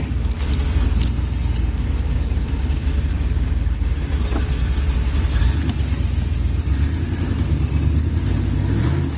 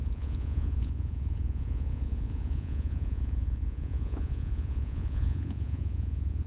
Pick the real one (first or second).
first